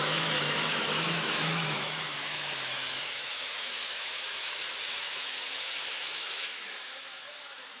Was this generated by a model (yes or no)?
yes